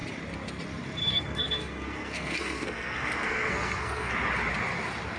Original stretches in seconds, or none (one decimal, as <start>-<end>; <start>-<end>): 0.0-1.0; 4.1-5.2